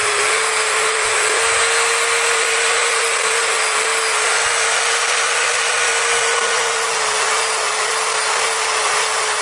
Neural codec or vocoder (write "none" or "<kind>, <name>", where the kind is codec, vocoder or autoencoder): none